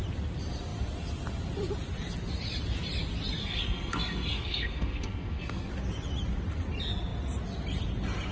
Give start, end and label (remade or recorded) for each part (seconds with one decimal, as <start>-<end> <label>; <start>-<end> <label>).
0.0-3.4 recorded; 3.4-5.7 remade; 5.7-8.3 recorded